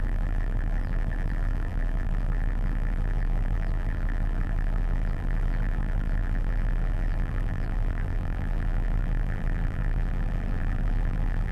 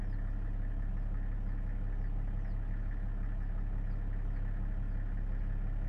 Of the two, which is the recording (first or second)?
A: second